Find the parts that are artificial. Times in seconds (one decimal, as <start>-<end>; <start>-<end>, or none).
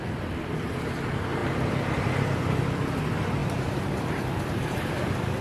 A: 0.0-5.4